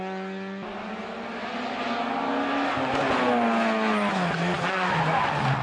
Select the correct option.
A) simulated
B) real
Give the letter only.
B